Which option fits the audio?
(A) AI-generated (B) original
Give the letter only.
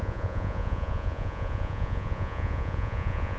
A